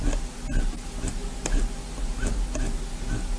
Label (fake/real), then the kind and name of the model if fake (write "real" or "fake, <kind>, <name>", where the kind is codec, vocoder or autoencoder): real